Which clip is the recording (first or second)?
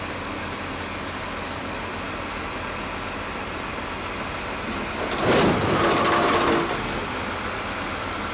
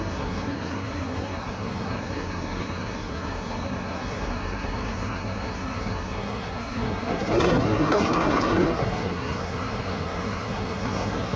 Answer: first